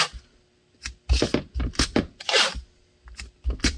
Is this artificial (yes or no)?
no